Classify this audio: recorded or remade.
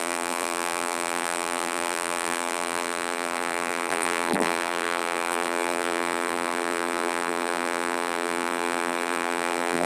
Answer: remade